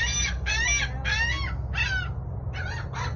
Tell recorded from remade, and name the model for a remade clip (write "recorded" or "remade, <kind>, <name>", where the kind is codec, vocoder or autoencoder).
recorded